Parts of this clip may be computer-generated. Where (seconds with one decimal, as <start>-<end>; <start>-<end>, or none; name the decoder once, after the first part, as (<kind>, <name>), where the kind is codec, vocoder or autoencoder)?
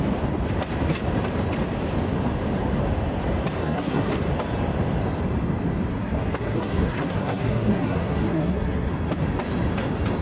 3.6-4.1 (codec, SNAC); 5.9-8.9